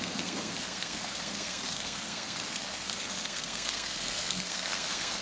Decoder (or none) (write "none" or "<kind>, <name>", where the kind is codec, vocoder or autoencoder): codec, SNAC